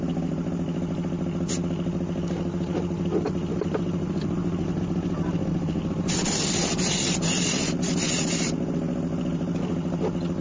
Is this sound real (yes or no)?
yes